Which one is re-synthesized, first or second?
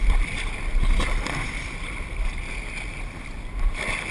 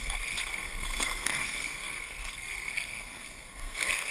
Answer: second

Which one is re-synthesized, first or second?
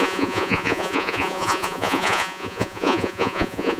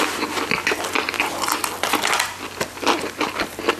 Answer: first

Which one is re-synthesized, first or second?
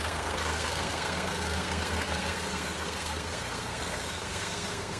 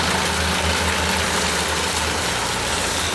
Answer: first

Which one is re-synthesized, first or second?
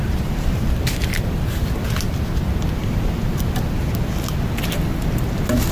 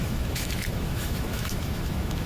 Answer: second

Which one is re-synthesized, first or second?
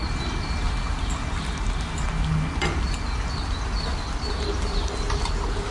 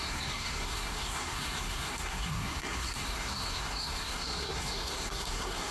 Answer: second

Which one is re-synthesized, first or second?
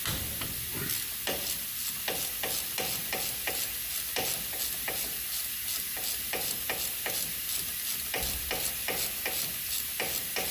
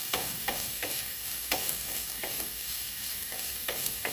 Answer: second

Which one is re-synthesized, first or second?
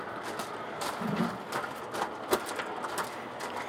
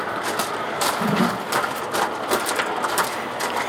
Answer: second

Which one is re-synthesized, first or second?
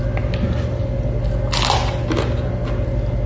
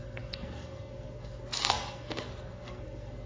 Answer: second